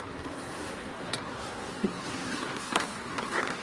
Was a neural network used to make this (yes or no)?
yes